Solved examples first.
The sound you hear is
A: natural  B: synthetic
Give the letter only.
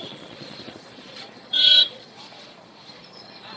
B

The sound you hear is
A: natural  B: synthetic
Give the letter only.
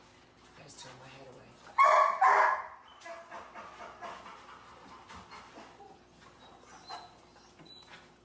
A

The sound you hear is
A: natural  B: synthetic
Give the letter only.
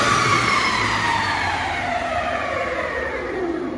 B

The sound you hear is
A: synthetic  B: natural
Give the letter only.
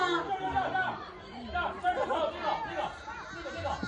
B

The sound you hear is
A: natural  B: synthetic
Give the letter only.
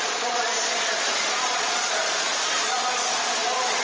B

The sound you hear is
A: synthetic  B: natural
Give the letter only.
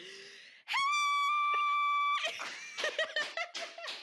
B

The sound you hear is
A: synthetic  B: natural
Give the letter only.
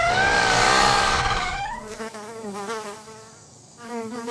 A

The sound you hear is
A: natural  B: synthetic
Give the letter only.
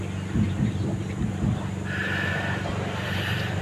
A